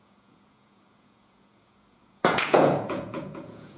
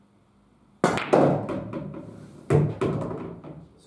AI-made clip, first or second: first